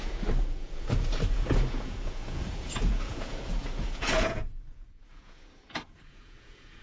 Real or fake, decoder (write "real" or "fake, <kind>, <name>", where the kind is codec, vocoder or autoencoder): fake, vocoder, Vocos